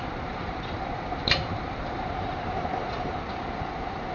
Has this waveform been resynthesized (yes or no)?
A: yes